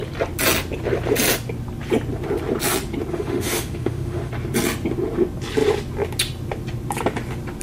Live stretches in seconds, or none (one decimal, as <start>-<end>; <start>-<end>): 0.0-3.1; 4.3-7.6

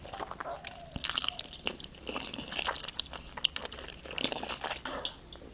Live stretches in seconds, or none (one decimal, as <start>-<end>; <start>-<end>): 0.0-5.5

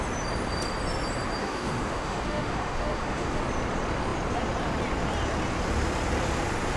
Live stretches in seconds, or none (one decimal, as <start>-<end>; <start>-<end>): 0.0-1.4; 3.4-6.8

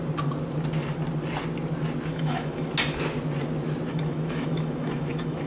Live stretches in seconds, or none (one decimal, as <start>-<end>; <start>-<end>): 0.0-2.1; 2.7-3.9

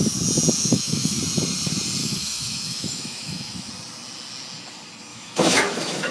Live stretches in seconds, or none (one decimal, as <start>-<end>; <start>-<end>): 0.0-0.6; 1.2-2.0; 3.7-5.1

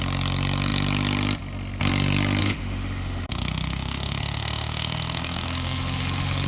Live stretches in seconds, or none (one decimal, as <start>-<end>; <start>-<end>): 0.0-2.4